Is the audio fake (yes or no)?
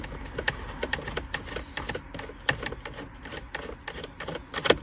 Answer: no